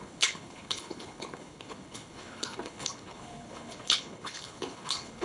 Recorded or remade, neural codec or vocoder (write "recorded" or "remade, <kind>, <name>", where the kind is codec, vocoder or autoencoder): remade, codec, HILCodec